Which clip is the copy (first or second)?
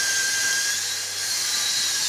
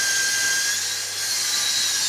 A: first